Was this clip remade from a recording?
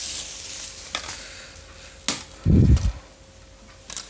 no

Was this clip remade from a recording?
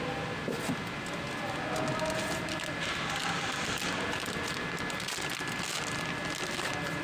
no